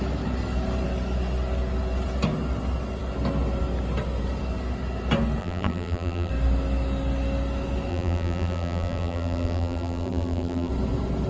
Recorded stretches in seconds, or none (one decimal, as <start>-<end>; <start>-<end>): 0.0-5.4; 6.3-7.9; 10.7-11.3